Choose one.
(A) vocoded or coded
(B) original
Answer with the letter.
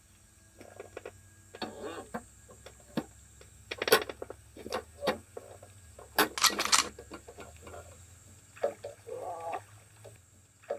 B